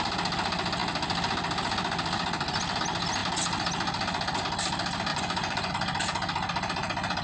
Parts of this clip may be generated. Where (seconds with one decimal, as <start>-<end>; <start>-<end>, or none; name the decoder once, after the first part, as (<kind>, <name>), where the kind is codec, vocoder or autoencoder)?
5.1-5.7 (vocoder, Vocos)